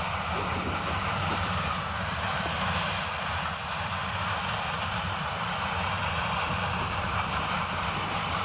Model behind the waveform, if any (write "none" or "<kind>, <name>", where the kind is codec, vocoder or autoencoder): vocoder, BigVGAN v2